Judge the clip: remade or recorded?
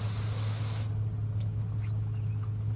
recorded